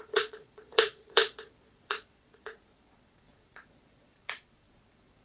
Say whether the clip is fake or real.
fake